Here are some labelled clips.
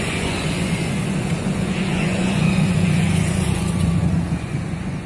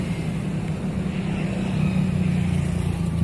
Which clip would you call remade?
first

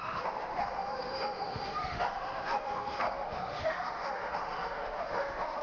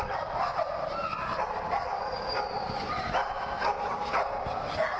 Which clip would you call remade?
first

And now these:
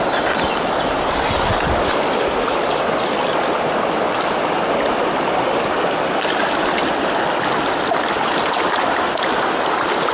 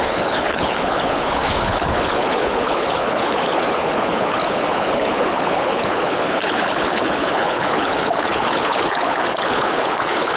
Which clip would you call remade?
second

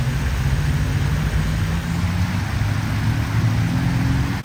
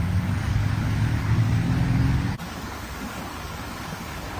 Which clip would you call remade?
second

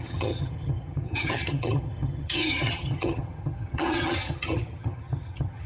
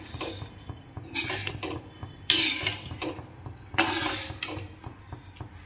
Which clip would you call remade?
first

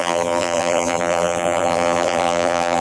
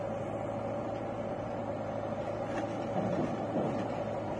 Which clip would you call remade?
first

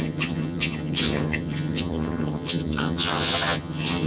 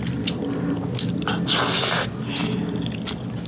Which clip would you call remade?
first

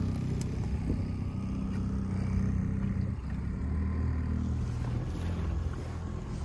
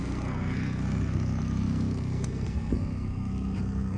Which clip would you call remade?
second